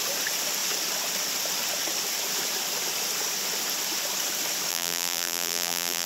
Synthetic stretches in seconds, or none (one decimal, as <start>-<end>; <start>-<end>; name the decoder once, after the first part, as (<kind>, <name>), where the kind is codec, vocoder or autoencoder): 4.7-6.1 (vocoder, BigVGAN v2)